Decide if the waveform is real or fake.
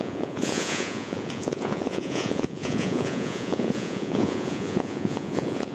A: fake